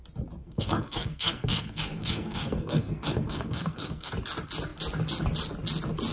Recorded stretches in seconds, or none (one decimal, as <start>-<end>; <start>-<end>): 0.0-0.4; 4.1-6.1